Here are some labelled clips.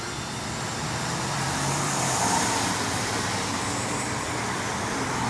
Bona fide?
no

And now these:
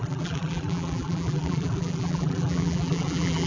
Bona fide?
no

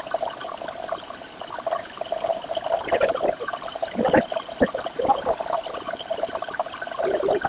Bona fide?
yes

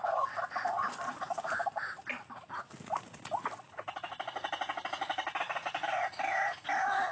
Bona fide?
yes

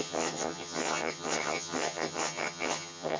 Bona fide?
no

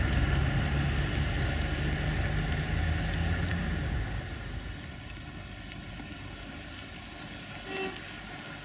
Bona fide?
yes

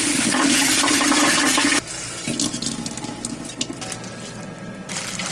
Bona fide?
yes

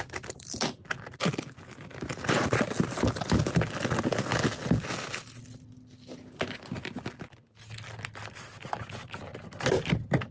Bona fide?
yes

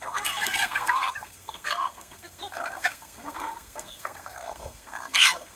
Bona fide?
no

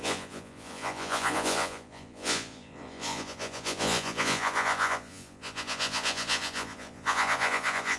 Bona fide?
no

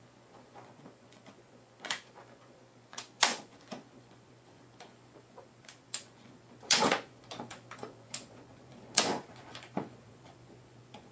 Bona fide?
no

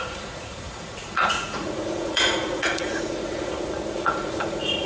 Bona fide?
no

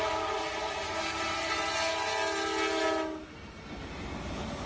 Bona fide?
yes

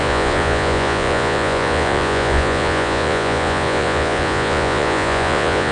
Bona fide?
no